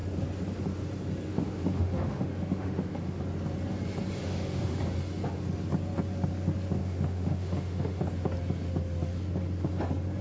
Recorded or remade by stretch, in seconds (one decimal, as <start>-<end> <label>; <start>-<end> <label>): 0.0-1.3 recorded; 1.3-3.2 remade; 3.2-4.2 recorded; 4.2-4.8 remade; 4.8-6.8 recorded; 6.8-8.0 remade; 8.0-10.2 recorded